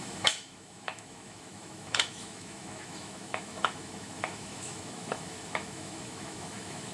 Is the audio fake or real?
fake